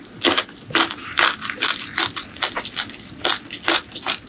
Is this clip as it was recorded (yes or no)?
yes